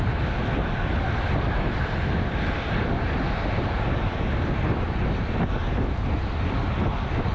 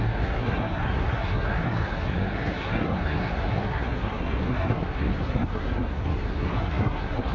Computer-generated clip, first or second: second